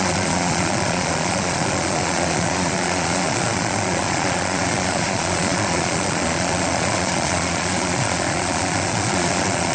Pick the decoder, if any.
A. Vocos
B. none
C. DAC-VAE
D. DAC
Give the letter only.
A